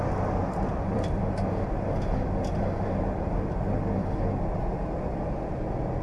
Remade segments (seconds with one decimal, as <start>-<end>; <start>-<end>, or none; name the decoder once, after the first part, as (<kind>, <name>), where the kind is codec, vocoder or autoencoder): 0.4-1.2 (vocoder, BigVGAN v2)